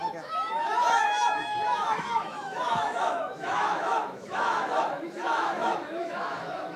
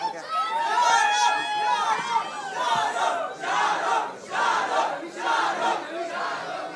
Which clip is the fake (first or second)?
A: first